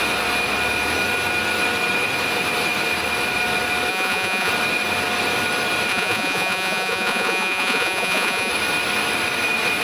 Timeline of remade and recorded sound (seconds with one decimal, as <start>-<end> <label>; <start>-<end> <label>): 0.0-3.9 recorded; 3.9-4.5 remade; 4.5-5.9 recorded; 5.9-8.5 remade; 8.5-9.8 recorded